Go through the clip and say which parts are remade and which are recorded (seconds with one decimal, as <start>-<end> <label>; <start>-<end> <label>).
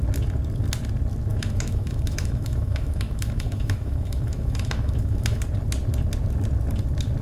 0.0-1.3 recorded; 1.3-5.4 remade; 5.4-7.2 recorded